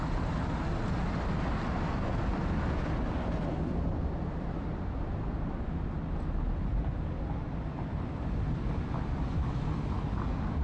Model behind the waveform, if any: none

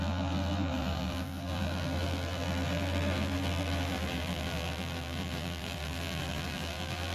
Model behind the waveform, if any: vocoder, BigVGAN v2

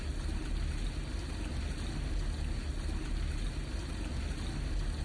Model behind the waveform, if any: none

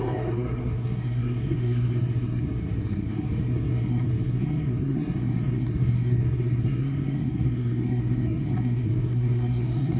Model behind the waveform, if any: codec, SNAC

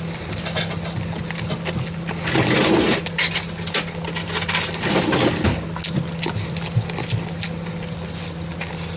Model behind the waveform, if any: none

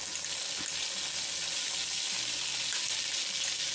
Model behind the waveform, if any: none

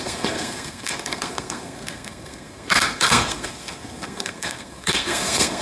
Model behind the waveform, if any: codec, SNAC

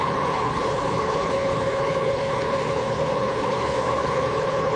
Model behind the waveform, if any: codec, HILCodec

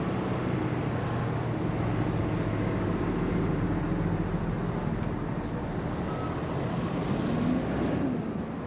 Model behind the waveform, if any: none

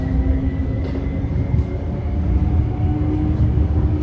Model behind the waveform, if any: codec, DAC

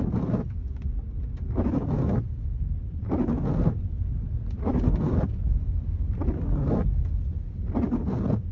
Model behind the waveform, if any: none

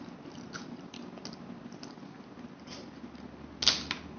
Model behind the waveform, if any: none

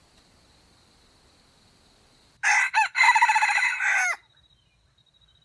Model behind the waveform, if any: none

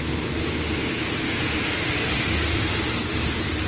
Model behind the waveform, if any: none